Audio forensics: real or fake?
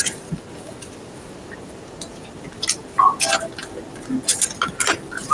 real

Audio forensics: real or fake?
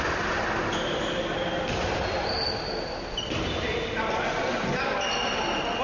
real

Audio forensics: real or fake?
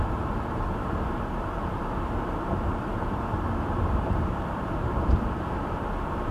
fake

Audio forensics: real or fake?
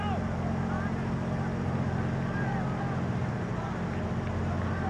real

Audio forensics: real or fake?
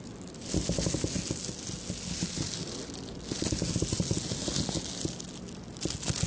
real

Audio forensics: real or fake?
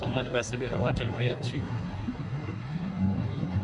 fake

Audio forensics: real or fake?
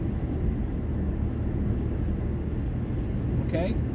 real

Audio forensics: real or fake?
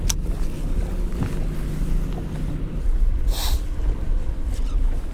real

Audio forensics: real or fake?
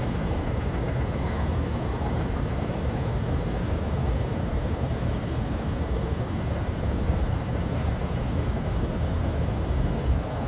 fake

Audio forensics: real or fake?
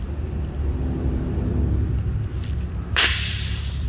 real